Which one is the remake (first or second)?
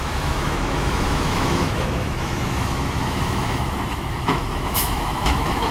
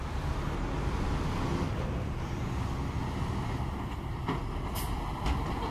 first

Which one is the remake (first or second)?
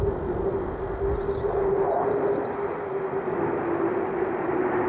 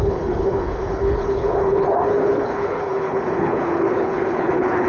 second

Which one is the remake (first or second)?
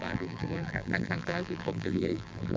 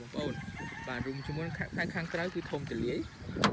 first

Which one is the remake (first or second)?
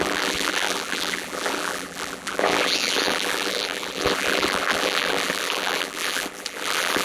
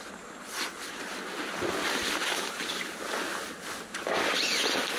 first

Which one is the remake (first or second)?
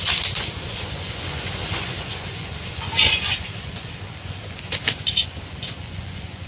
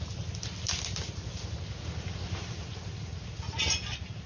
first